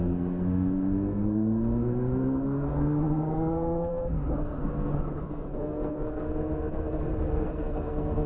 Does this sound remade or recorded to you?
remade